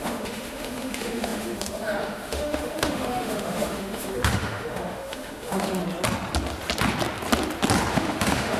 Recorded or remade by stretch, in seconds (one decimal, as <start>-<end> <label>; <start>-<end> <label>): 0.0-5.8 remade; 5.8-7.9 recorded; 7.9-8.6 remade